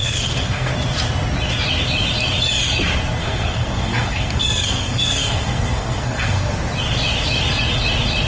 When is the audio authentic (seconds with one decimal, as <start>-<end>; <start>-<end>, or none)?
0.7-3.2; 6.5-8.3